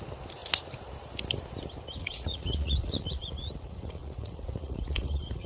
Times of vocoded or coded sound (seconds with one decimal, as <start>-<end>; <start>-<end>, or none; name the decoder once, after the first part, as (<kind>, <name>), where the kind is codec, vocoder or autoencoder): 2.0-5.5 (vocoder, Vocos)